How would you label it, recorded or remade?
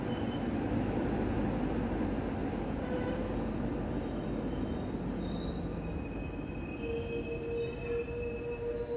recorded